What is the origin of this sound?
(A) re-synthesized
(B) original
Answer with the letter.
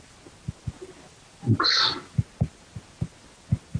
B